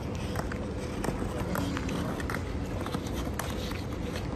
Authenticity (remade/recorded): recorded